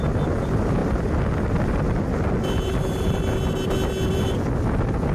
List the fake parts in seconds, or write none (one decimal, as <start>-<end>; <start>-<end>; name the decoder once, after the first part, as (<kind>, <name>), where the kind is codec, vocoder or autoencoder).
none